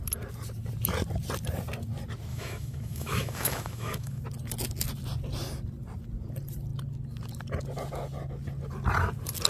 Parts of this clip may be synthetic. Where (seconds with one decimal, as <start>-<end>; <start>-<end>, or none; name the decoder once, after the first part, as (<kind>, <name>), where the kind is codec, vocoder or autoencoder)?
2.3-4.2 (autoencoder, DAC-VAE)